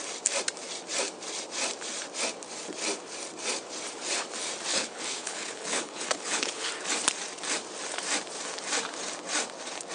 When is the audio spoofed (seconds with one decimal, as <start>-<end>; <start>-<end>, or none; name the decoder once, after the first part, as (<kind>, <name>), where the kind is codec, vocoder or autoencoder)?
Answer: 4.7-6.7 (codec, HILCodec)